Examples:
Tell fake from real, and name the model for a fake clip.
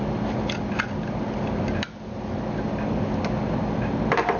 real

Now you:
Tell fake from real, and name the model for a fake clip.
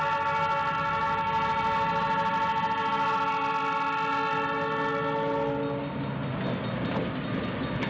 real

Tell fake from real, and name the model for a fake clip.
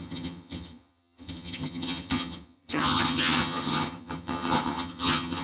fake, vocoder, HiFi-GAN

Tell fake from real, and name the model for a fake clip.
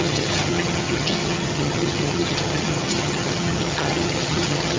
fake, vocoder, HiFi-GAN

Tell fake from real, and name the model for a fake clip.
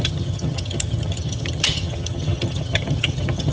fake, vocoder, HiFi-GAN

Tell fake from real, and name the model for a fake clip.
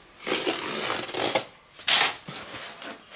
real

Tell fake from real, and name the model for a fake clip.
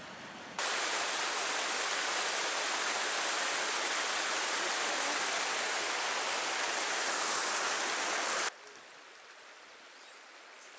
real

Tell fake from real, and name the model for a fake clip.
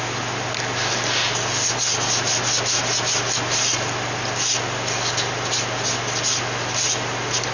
real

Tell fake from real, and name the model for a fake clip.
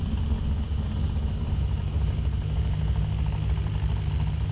real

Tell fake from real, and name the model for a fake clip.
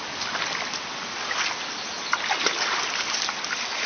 real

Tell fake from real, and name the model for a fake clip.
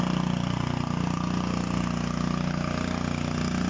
real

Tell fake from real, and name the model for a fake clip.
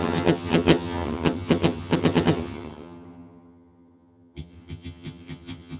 fake, vocoder, HiFi-GAN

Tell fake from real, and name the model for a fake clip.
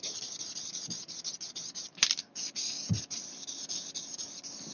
real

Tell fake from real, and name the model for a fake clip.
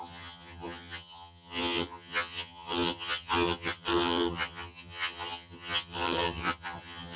fake, vocoder, HiFi-GAN